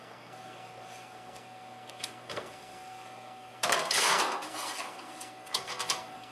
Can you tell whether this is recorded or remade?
remade